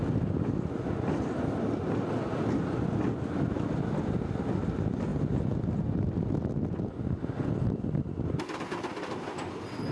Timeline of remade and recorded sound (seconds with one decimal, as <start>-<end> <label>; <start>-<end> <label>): 0.0-9.9 recorded